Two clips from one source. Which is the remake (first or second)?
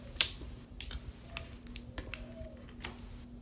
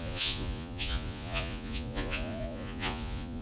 second